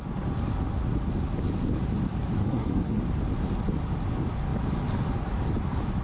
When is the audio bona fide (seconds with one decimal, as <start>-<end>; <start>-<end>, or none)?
0.0-2.4; 3.0-6.0